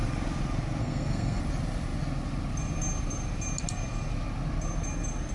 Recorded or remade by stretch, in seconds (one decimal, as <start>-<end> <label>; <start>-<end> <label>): 0.0-0.8 recorded; 0.8-1.4 remade; 1.4-5.3 recorded